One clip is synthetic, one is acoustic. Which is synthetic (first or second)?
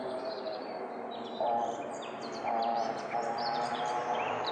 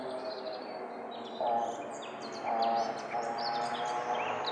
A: first